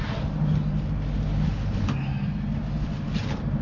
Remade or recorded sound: recorded